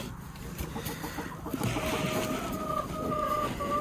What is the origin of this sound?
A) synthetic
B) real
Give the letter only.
B